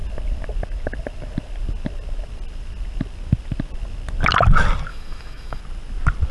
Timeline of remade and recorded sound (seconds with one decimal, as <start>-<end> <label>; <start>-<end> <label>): 0.0-4.9 recorded; 4.9-5.6 remade; 5.6-6.3 recorded